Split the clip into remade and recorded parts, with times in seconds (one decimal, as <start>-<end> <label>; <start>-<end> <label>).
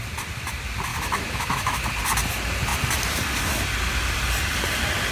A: 0.0-0.9 recorded; 0.9-1.9 remade; 1.9-5.1 recorded